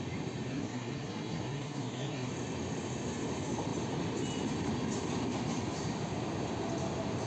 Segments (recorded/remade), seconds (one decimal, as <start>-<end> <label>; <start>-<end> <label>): 0.0-0.5 recorded; 0.5-2.3 remade; 2.3-7.3 recorded